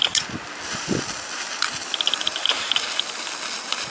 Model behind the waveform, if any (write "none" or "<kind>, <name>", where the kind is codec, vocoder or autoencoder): none